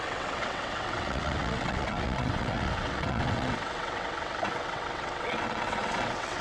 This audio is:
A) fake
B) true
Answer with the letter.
A